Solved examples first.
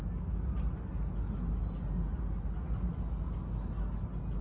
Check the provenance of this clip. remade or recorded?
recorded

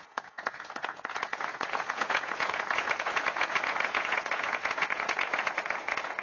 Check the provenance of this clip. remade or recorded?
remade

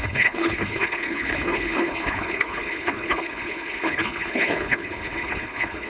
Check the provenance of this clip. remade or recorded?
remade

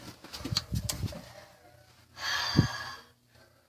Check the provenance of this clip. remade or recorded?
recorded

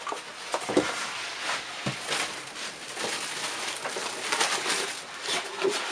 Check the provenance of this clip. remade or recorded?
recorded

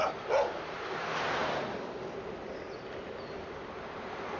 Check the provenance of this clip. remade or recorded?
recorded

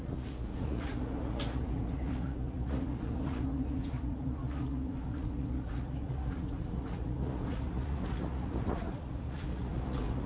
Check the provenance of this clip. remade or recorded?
remade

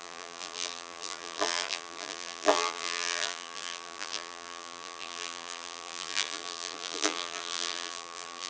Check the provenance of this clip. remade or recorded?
remade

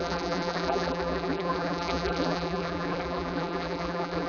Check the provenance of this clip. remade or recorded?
remade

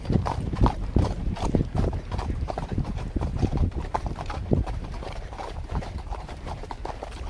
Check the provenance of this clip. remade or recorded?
remade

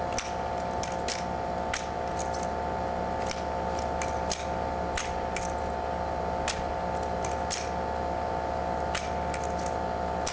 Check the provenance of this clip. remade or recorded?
recorded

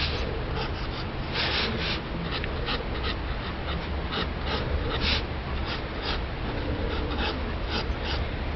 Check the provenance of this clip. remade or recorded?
recorded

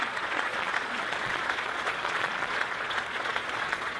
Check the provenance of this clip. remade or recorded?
remade